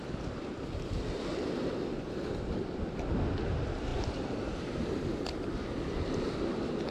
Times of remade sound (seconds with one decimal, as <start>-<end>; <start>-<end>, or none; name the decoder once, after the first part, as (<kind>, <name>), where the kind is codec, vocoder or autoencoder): 3.9-5.2 (vocoder, BigVGAN v2)